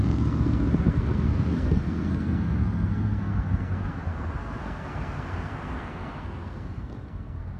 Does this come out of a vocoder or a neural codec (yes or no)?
yes